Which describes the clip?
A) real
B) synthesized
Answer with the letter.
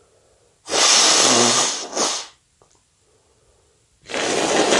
A